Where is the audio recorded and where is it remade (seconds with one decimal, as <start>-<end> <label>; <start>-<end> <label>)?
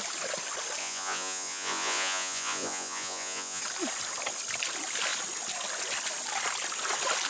0.0-0.8 recorded; 0.8-3.6 remade; 3.6-7.3 recorded